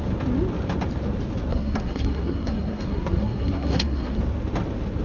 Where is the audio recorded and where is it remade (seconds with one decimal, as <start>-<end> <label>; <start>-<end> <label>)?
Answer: 0.0-1.5 recorded; 1.5-4.2 remade; 4.2-5.0 recorded